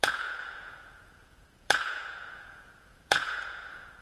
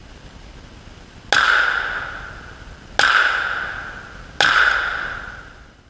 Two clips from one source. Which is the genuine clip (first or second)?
second